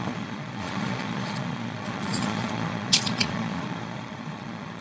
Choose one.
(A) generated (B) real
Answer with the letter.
A